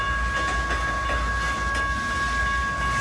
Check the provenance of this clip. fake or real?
real